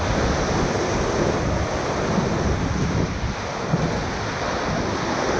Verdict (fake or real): real